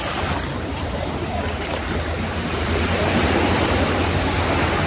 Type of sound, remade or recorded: recorded